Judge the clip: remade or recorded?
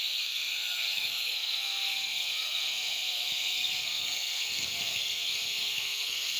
remade